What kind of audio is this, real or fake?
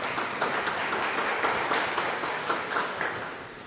real